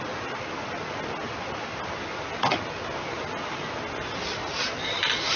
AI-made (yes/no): no